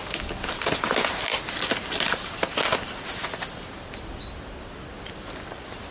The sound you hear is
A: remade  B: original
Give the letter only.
B